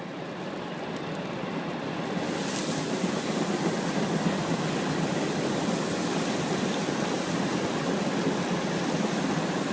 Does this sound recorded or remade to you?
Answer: recorded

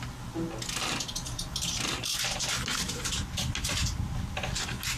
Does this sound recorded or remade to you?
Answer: recorded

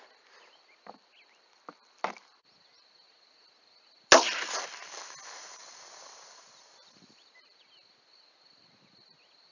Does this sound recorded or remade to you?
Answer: recorded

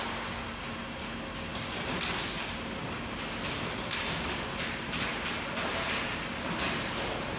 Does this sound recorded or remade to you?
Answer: recorded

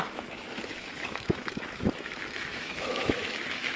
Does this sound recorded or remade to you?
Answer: remade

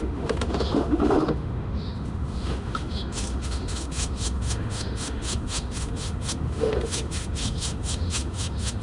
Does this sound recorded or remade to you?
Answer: remade